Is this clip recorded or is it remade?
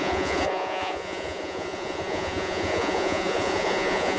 remade